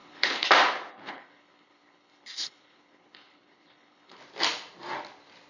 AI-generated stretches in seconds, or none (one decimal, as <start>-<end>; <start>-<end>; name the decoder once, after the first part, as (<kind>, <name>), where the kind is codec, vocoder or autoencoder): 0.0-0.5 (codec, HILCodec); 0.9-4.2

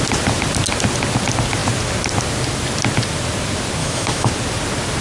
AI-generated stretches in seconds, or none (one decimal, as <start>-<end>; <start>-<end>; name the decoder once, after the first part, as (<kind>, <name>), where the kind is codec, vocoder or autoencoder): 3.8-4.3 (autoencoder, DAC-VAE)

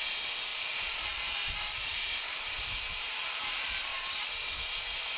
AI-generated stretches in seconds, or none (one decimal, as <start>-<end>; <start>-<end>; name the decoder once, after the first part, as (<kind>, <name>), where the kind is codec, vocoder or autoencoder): 0.0-3.9 (vocoder, BigVGAN v2)